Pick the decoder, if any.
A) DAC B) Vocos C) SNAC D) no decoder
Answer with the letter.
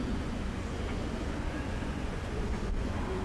B